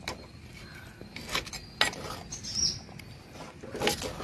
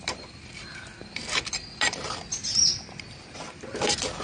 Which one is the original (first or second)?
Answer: first